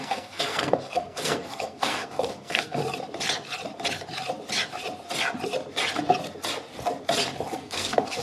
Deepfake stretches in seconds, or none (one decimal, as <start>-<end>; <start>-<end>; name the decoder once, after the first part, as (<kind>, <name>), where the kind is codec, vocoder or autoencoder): 0.0-2.8 (codec, SNAC); 7.5-8.2